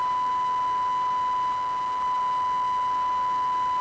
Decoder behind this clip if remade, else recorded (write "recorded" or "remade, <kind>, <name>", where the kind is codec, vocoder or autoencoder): recorded